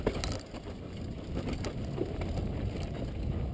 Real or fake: real